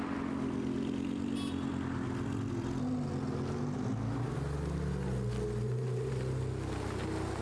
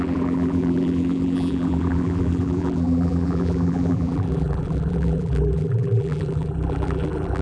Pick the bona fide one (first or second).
first